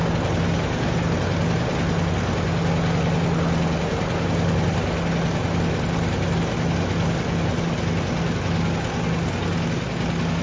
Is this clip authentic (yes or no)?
yes